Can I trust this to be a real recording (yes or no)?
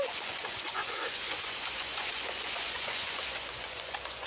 no